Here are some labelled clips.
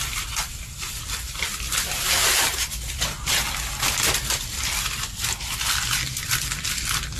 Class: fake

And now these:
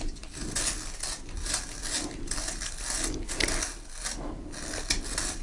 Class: real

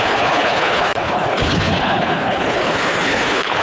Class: fake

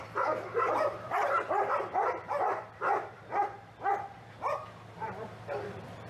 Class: fake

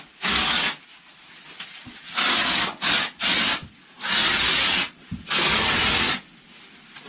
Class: real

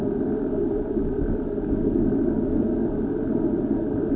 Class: real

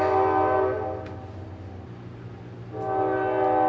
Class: real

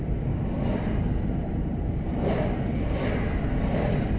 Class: real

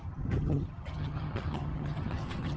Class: fake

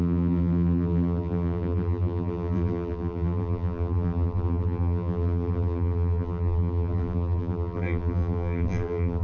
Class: fake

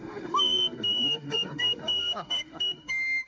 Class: fake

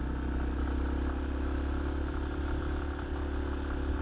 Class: real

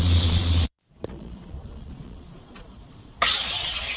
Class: fake